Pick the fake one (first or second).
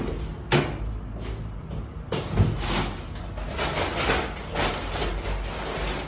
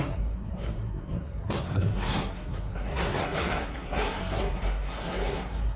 second